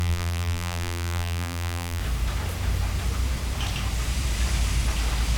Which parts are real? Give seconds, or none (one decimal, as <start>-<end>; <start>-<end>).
2.0-5.4